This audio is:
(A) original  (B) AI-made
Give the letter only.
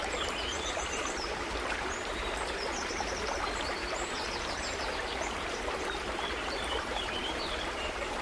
B